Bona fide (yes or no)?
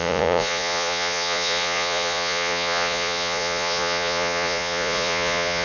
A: no